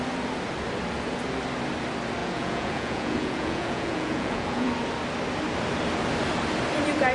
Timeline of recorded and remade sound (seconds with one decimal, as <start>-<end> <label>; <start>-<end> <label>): 0.0-2.2 recorded; 2.2-4.7 remade; 4.7-7.1 recorded